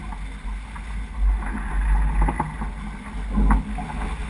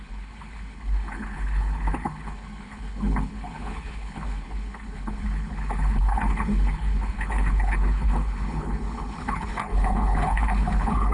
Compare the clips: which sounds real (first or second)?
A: first